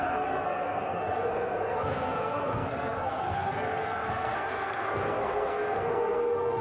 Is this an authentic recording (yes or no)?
no